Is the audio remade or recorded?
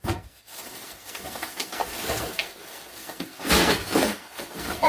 remade